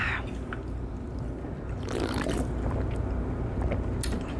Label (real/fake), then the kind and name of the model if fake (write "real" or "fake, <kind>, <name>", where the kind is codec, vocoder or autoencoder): real